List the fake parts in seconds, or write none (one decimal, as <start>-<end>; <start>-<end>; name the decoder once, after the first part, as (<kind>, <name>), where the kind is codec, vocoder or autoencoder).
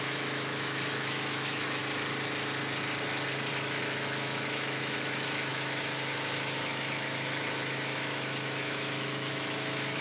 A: 0.0-1.8 (autoencoder, DAC-VAE); 3.5-10.0